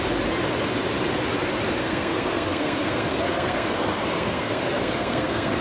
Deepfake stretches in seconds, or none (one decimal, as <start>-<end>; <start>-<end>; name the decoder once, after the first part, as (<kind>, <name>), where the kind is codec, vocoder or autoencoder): 1.8-5.6 (codec, SNAC)